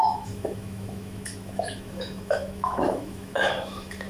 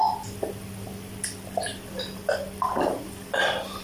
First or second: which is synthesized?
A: first